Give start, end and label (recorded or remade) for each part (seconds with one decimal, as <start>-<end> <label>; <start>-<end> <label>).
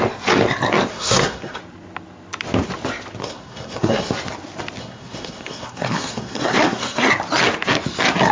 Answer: 0.0-0.9 recorded; 0.9-1.6 remade; 1.6-3.2 recorded; 3.2-4.1 remade; 4.1-4.8 recorded; 4.8-7.1 remade; 7.1-8.3 recorded